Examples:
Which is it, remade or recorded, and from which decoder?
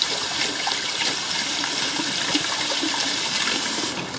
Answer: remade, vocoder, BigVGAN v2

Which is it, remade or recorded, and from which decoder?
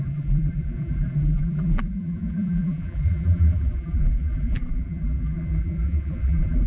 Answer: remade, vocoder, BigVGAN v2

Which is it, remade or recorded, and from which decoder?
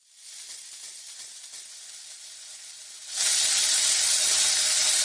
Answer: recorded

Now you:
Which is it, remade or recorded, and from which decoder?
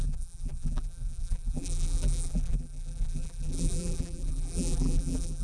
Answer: remade, vocoder, BigVGAN v2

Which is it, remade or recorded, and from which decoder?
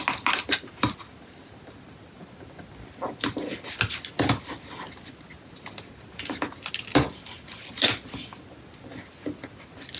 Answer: recorded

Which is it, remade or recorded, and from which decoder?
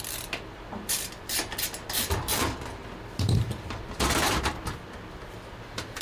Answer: remade, vocoder, BigVGAN v2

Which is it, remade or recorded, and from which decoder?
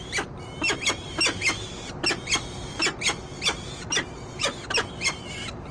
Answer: recorded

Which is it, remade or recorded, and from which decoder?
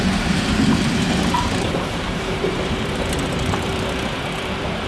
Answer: remade, vocoder, BigVGAN v2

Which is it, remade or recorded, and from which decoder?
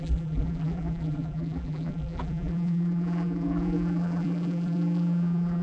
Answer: remade, vocoder, BigVGAN v2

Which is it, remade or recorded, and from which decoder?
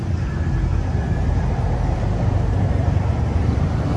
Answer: remade, vocoder, BigVGAN v2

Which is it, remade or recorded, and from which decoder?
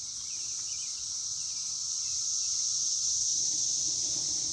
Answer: recorded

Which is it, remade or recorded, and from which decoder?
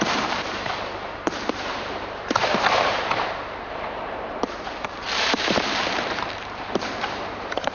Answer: remade, vocoder, BigVGAN v2